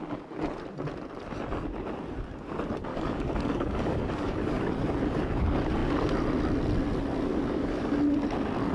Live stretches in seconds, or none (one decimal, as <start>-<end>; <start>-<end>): 0.0-2.9; 4.6-7.3; 8.0-8.7